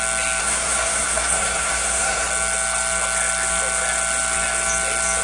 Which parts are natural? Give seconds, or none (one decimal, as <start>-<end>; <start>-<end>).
0.0-0.4; 2.3-5.2